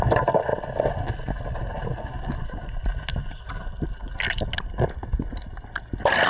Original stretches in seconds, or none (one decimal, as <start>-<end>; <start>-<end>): 0.0-6.3

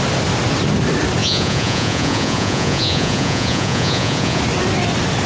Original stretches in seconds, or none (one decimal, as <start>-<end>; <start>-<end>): 0.0-1.2; 4.4-5.3

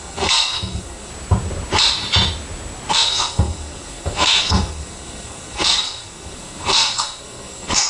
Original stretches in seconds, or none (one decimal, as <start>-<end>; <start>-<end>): 1.1-2.9

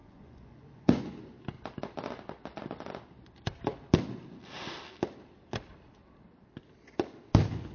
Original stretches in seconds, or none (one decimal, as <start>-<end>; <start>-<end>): 1.3-7.7

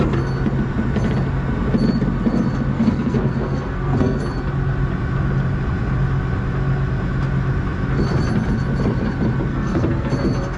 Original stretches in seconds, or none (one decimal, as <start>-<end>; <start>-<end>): 0.0-2.7; 4.2-9.5; 10.1-10.6

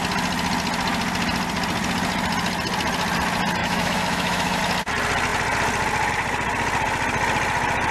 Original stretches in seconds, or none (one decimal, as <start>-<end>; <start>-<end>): 0.0-3.6; 4.6-7.9